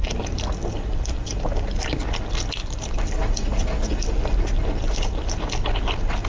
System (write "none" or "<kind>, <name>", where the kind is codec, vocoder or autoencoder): none